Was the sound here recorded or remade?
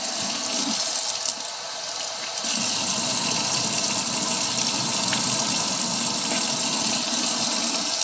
recorded